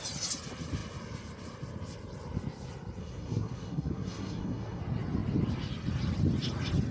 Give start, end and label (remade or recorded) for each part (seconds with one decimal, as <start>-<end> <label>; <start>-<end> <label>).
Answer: 0.0-3.0 recorded; 3.0-4.8 remade; 4.8-6.9 recorded